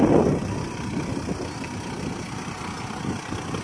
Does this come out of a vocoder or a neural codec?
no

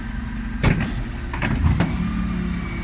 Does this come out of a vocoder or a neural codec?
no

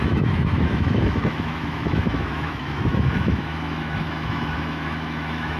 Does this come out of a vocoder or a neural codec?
yes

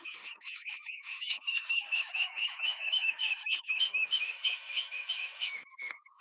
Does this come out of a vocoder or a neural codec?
yes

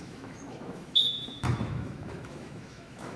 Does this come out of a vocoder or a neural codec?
yes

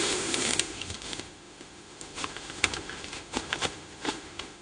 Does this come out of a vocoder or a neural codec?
yes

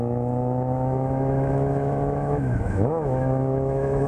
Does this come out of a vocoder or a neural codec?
yes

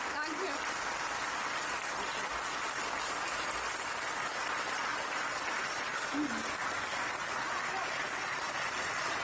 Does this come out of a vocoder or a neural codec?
no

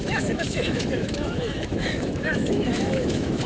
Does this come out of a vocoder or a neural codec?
yes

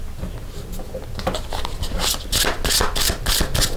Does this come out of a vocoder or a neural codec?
no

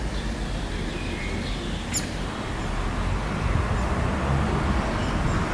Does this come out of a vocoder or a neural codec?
no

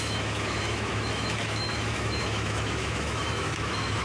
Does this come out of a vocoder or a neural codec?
yes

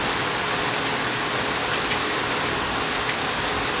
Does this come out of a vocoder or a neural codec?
no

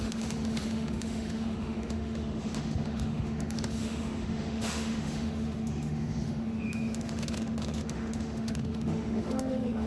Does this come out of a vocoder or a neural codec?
yes